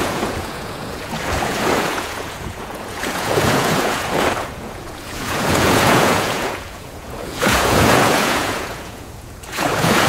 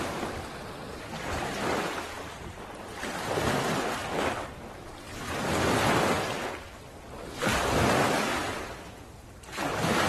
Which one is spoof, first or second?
first